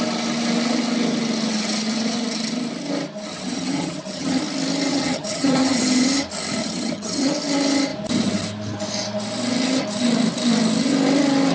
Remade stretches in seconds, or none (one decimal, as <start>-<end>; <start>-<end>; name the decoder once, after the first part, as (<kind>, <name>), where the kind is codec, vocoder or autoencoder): 3.3-4.4 (vocoder, HiFi-GAN); 4.9-5.8; 6.6-7.3